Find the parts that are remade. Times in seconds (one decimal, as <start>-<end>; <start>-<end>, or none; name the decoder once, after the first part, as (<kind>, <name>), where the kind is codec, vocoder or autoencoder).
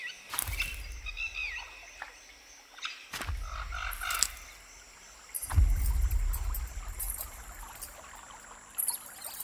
0.0-0.7 (vocoder, BigVGAN v2); 2.4-9.4